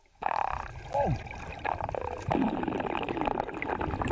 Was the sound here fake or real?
real